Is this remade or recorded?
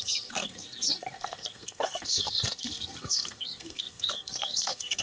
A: remade